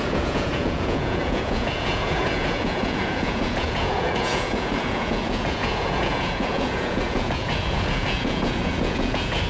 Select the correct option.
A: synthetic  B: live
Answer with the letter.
A